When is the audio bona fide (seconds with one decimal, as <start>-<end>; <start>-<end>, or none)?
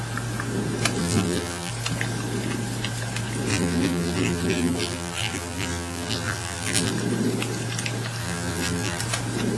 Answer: 0.0-1.0; 1.7-3.5; 6.9-8.2; 9.0-9.6